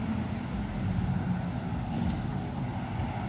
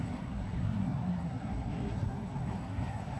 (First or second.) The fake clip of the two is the second